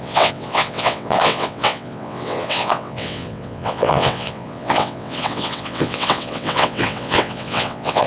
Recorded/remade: remade